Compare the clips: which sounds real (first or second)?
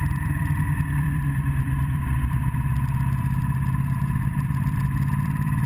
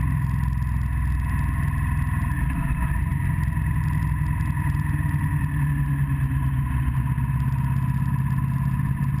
second